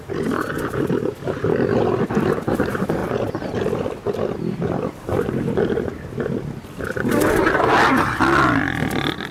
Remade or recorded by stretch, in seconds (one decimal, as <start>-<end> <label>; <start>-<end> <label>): 0.0-9.3 recorded